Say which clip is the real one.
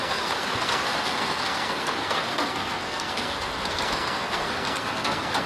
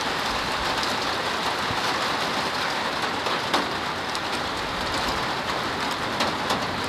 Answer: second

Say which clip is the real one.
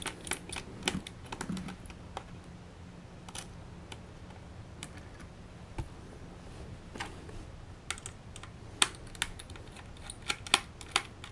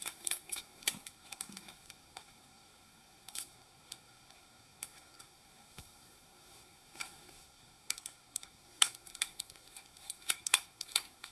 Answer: first